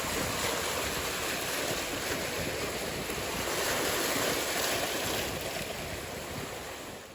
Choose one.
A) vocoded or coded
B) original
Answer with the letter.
B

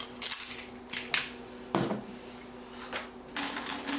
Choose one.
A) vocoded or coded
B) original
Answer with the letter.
B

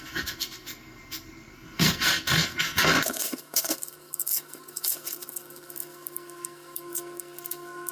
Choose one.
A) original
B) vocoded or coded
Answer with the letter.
B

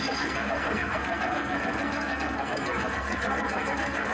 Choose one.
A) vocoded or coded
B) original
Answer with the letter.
A